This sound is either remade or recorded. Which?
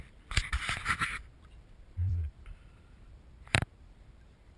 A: remade